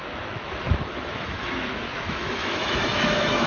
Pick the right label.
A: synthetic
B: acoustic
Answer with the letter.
A